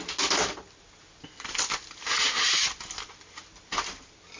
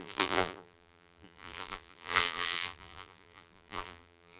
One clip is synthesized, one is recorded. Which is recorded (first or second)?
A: first